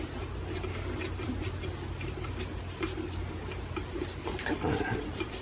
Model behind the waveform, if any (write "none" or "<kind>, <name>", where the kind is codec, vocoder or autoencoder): none